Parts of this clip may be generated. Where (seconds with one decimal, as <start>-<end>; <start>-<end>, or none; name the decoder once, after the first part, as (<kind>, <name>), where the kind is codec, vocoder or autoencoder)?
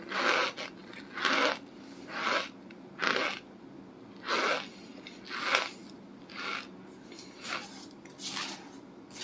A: none